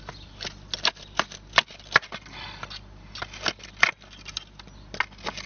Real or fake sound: real